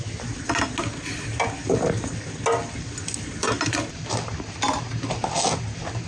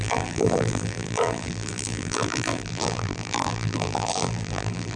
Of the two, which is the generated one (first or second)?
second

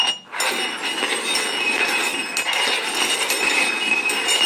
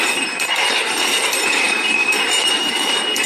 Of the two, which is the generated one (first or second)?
second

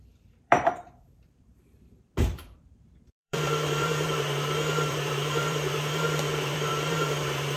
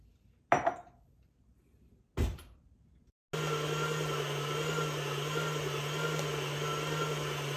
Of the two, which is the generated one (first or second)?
first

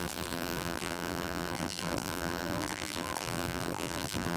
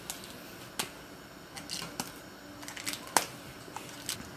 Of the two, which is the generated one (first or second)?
first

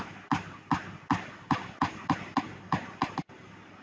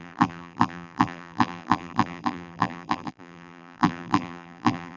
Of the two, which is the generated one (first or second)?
second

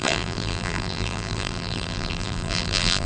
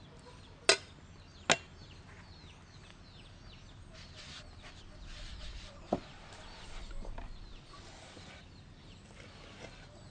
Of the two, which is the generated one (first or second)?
first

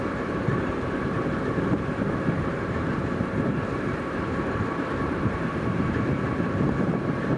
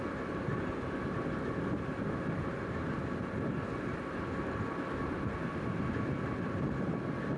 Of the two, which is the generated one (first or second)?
first